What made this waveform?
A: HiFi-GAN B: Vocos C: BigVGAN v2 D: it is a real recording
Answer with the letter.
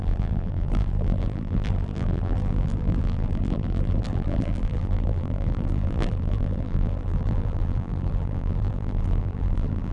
C